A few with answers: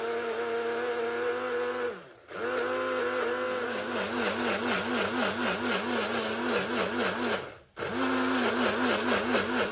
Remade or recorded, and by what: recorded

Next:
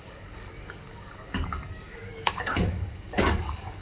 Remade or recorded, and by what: remade, codec, DAC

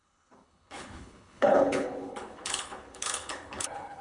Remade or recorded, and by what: remade, codec, HILCodec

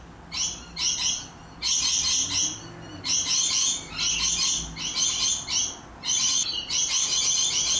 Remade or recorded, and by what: recorded